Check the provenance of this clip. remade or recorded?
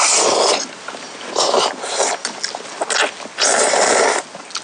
recorded